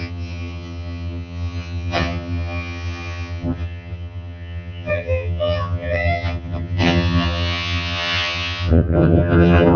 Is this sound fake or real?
fake